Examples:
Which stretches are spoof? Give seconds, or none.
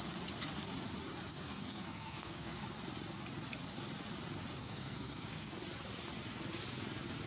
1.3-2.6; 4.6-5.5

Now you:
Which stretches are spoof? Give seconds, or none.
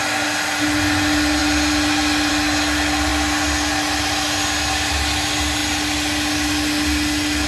none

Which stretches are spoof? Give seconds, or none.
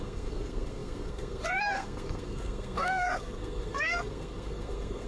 0.0-5.1